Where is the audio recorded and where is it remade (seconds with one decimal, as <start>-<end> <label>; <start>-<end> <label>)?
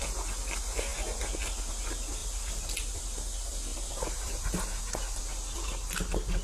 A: 0.0-2.2 recorded; 2.2-3.0 remade; 3.0-3.7 recorded; 3.7-4.7 remade; 4.7-6.4 recorded